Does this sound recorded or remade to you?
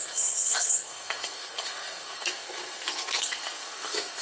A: remade